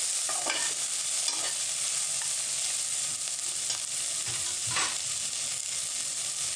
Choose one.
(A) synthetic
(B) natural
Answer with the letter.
B